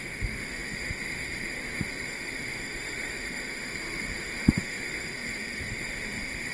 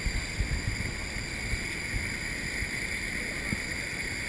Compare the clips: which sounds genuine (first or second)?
second